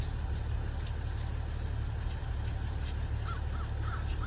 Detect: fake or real real